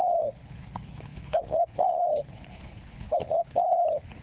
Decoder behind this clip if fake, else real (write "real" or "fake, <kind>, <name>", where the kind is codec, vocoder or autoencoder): fake, codec, HILCodec